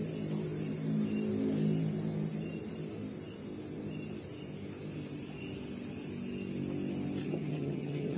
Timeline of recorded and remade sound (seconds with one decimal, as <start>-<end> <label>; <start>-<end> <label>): 0.0-7.2 recorded; 7.2-8.2 remade